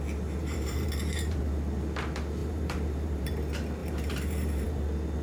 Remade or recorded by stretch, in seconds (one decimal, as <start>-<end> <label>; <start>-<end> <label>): 0.0-0.4 recorded; 0.4-1.5 remade; 1.5-2.4 recorded; 2.4-3.3 remade; 3.3-3.8 recorded; 3.8-4.8 remade; 4.8-5.2 recorded